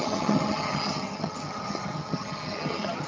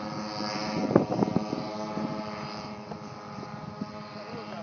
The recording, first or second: second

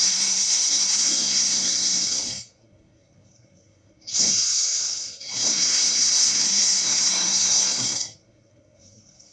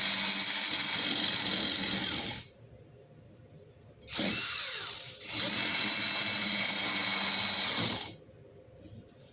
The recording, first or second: second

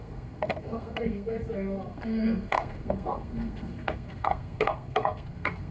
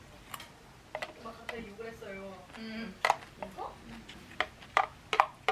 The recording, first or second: second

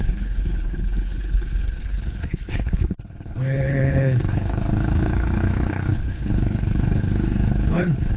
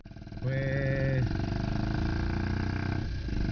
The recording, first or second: second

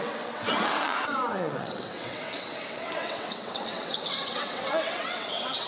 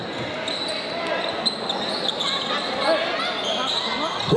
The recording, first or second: second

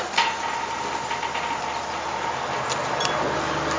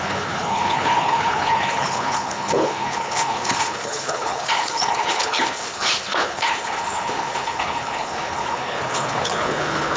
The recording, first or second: first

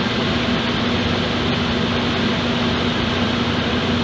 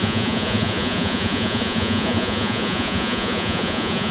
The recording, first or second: first